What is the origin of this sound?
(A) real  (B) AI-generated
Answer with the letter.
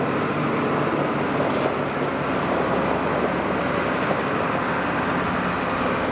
A